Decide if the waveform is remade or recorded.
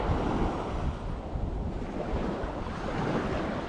recorded